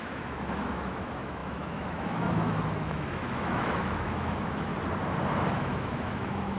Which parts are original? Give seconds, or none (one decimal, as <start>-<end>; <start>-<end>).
4.7-5.5